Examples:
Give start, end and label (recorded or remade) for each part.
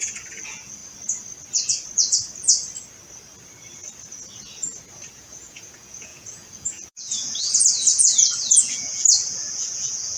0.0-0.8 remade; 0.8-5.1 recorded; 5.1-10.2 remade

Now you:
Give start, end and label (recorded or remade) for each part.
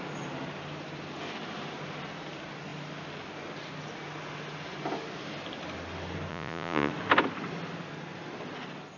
0.0-6.3 recorded; 6.3-6.9 remade; 6.9-9.0 recorded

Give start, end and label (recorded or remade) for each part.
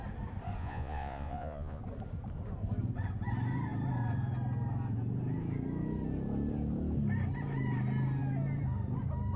0.0-0.6 recorded; 0.6-1.8 remade; 1.8-9.4 recorded